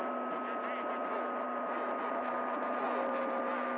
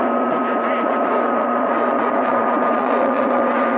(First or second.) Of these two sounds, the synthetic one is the second